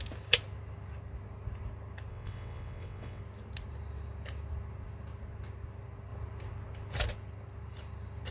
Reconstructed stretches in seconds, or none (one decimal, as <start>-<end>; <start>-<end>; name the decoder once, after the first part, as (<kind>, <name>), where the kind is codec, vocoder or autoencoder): 2.1-3.2 (vocoder, WaveNeXt)